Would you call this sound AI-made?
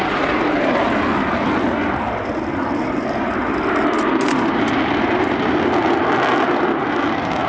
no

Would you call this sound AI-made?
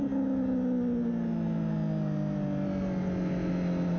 no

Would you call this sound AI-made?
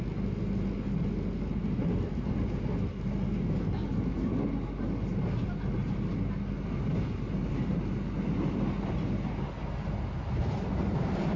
no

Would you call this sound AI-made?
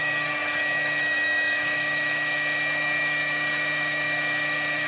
yes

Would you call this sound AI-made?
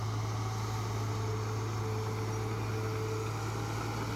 no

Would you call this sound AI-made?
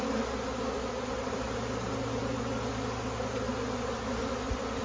no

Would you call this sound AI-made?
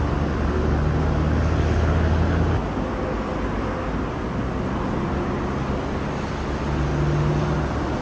no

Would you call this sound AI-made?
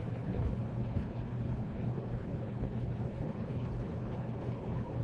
yes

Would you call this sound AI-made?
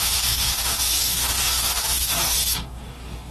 yes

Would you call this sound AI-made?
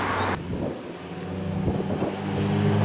no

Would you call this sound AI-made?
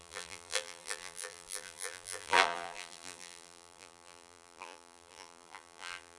yes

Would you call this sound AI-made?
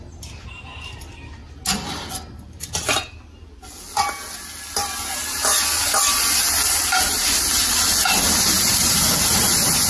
no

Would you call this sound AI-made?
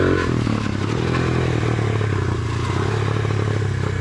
no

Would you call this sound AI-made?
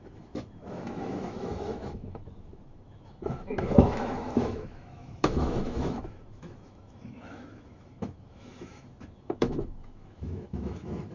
yes